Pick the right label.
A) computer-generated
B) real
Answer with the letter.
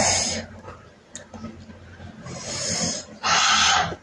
B